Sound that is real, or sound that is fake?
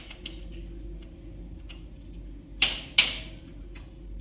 real